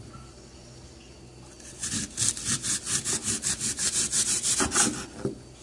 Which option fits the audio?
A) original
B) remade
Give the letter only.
A